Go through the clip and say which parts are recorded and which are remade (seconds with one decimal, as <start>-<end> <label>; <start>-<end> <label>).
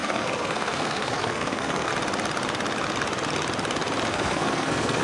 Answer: 0.0-1.9 remade; 1.9-4.1 recorded; 4.1-5.0 remade